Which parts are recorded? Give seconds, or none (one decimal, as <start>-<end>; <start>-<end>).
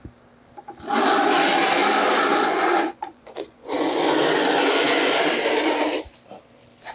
0.0-2.3; 5.1-6.9